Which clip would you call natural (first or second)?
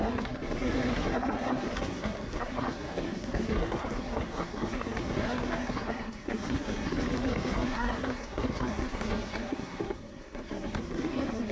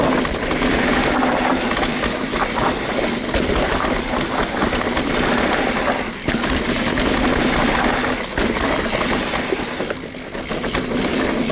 second